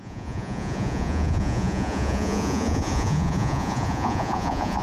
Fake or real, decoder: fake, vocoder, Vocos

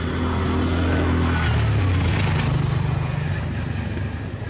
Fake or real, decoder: real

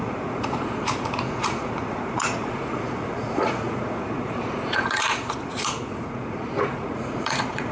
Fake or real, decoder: fake, vocoder, Vocos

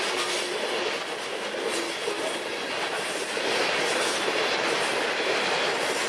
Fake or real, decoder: real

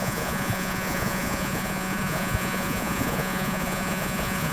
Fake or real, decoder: fake, vocoder, Vocos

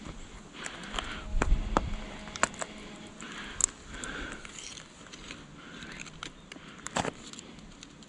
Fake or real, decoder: real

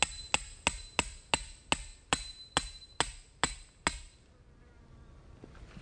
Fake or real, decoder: real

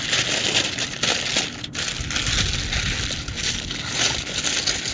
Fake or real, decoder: real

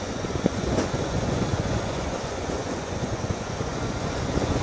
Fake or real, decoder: fake, vocoder, Vocos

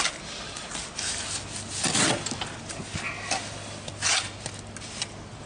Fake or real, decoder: real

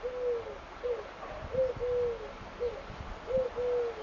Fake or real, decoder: real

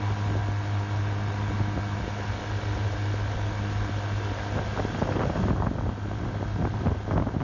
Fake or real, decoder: real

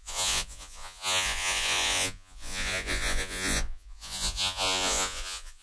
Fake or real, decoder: fake, vocoder, Vocos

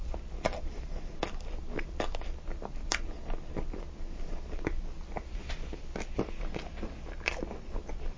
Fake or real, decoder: real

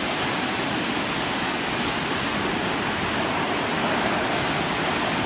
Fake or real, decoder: real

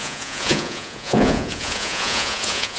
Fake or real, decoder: fake, vocoder, Vocos